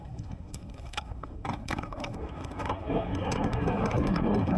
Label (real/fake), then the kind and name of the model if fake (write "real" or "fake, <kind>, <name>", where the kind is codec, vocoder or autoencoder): fake, codec, SNAC